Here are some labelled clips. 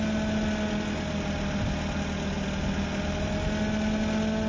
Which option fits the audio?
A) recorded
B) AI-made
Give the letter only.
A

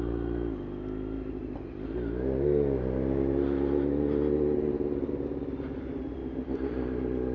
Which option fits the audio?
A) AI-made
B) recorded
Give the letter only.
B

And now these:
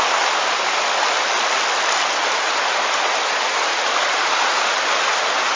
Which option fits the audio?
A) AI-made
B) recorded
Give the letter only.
B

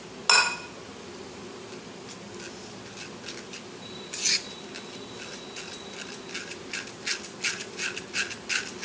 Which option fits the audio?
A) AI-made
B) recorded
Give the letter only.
B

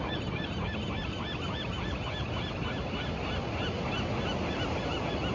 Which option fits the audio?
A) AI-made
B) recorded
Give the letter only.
B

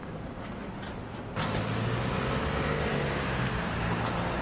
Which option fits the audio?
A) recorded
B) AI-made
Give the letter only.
A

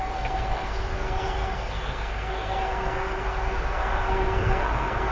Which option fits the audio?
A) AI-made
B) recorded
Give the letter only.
A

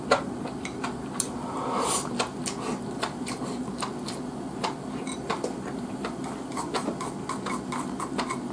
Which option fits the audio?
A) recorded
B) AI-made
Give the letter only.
A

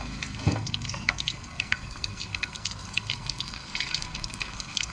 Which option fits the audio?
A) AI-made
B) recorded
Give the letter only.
A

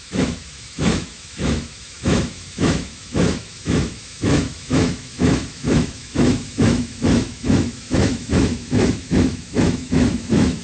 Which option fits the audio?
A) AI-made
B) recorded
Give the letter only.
A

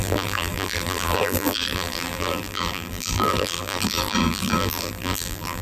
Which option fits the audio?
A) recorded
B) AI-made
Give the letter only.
B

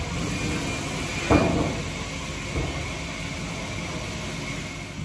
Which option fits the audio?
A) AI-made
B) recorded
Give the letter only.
B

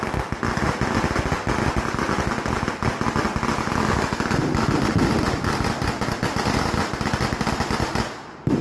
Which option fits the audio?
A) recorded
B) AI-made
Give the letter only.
A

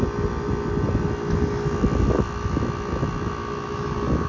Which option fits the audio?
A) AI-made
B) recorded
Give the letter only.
B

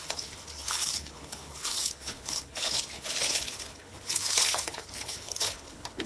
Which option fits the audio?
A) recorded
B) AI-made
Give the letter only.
B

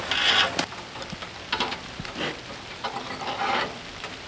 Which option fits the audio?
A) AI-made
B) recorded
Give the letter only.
B